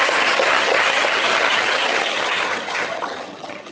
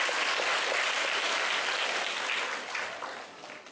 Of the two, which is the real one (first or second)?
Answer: second